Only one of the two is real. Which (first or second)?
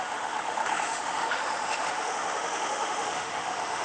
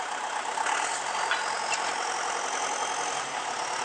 second